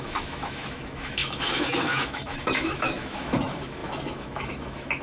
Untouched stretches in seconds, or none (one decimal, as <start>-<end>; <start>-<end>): none